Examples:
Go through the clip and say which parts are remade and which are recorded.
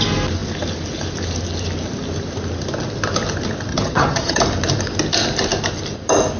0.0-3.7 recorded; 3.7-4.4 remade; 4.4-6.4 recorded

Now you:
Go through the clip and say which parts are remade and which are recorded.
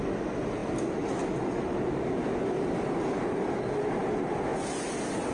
0.0-5.3 recorded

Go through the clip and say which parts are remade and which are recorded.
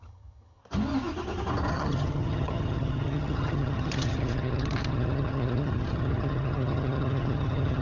0.0-0.6 remade; 0.6-1.7 recorded; 1.7-7.8 remade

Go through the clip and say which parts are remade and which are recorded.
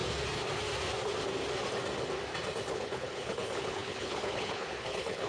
0.0-2.7 recorded; 2.7-5.3 remade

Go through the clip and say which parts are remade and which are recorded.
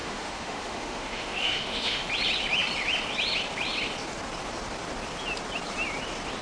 0.0-2.1 remade; 2.1-6.4 recorded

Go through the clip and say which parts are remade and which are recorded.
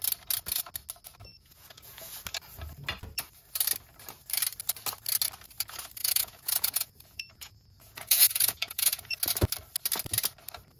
0.0-1.3 recorded; 1.3-2.1 remade; 2.1-6.0 recorded; 6.0-9.2 remade; 9.2-10.8 recorded